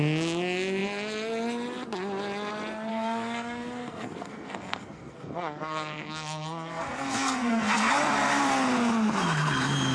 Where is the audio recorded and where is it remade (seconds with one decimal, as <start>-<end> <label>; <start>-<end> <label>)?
0.0-2.9 recorded; 2.9-7.9 remade; 7.9-9.9 recorded